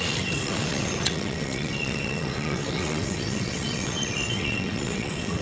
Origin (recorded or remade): remade